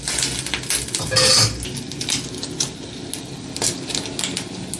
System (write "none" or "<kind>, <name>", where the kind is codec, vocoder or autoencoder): none